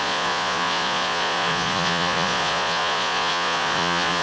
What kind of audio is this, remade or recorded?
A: remade